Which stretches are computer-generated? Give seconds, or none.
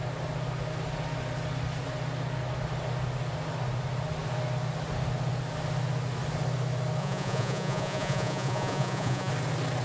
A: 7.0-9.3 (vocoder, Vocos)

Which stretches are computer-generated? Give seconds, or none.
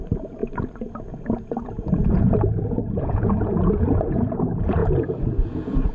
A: 0.0-5.9 (vocoder, Vocos)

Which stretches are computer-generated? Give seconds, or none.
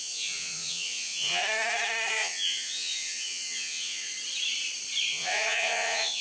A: 0.0-1.4 (vocoder, Vocos); 2.1-4.1; 5.1-6.2